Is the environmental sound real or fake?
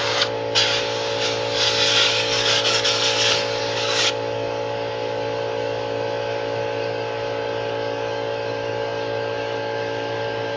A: fake